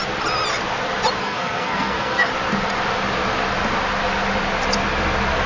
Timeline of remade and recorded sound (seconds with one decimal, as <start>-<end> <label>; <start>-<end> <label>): 0.0-1.2 recorded; 1.2-2.3 remade; 2.3-5.5 recorded